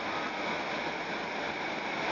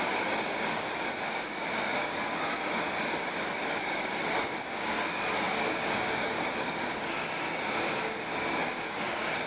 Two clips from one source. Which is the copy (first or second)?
second